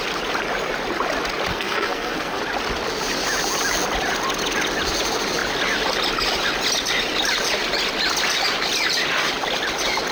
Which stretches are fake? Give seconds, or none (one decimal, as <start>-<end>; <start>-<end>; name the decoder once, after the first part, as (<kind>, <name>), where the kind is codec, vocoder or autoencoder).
1.5-2.4 (codec, SNAC)